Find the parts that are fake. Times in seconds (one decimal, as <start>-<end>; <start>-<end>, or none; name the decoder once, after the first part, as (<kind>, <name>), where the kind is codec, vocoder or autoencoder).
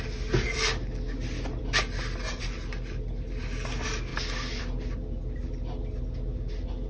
none